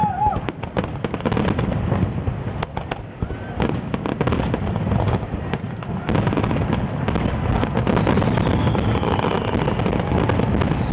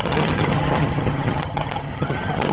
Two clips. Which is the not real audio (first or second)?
second